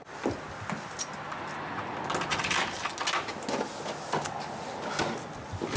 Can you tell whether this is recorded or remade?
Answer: recorded